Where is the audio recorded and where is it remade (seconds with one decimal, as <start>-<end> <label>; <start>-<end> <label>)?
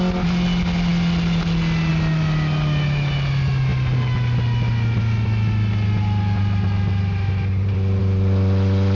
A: 0.0-8.9 recorded